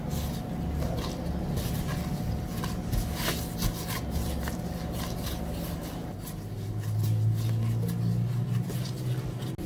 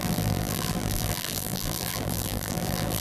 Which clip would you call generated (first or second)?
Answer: second